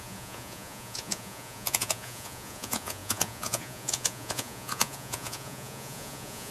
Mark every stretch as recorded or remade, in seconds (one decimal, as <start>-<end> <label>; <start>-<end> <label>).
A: 0.0-6.5 remade